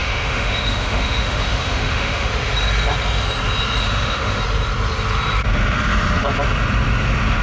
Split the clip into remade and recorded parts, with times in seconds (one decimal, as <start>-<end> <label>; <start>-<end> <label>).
0.0-2.3 remade; 2.3-3.8 recorded; 3.8-4.4 remade; 4.4-7.4 recorded